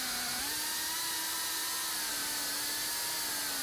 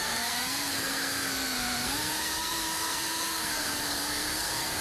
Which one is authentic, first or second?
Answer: first